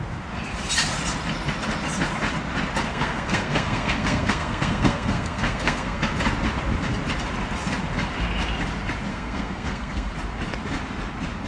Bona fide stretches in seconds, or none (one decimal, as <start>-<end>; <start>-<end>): 0.0-2.9; 6.1-9.1; 10.1-11.5